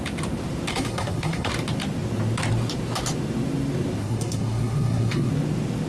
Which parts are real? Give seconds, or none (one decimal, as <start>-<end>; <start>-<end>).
0.0-0.7; 1.5-4.0; 5.3-5.9